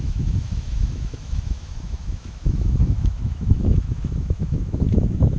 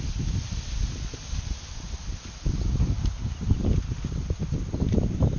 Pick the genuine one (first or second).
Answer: second